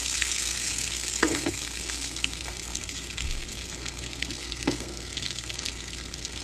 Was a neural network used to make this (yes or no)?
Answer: yes